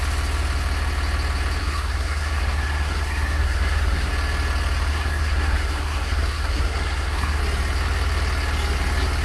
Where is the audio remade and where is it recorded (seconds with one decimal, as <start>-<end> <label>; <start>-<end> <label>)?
0.0-1.6 recorded; 1.6-4.1 remade; 4.1-4.9 recorded; 4.9-7.4 remade; 7.4-9.2 recorded